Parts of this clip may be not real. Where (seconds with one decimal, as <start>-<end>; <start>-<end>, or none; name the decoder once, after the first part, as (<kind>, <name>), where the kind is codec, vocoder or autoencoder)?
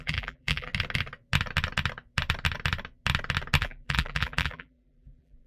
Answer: 0.0-0.7 (vocoder, BigVGAN v2); 3.6-5.5